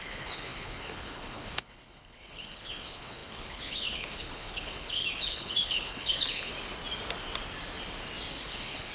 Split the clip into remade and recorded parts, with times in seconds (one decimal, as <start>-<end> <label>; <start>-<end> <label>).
0.0-6.5 remade; 6.5-8.3 recorded; 8.3-8.9 remade